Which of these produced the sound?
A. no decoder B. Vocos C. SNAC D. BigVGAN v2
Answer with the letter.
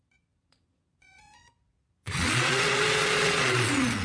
B